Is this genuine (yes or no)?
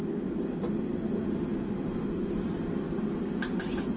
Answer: yes